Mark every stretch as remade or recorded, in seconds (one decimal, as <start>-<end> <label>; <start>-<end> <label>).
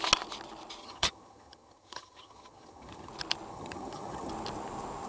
0.0-0.8 recorded; 0.8-3.1 remade; 3.1-3.5 recorded; 3.5-4.3 remade; 4.3-5.1 recorded